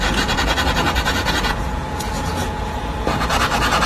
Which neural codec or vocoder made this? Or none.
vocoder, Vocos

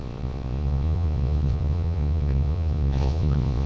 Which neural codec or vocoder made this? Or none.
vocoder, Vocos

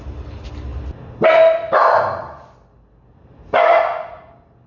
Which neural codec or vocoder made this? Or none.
none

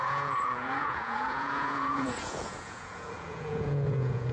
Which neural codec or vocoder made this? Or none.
vocoder, Vocos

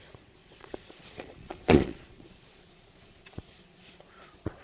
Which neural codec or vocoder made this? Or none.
vocoder, Vocos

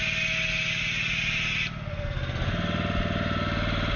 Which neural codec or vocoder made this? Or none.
none